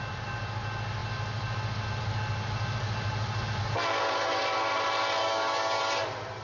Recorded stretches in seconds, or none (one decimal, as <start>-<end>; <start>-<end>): 0.0-5.2; 5.8-6.4